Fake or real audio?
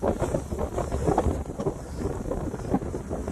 real